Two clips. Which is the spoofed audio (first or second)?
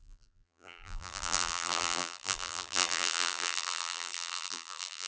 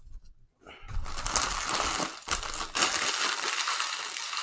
first